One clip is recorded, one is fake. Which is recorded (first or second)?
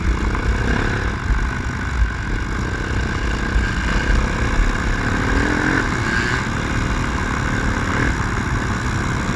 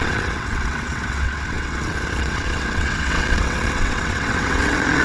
first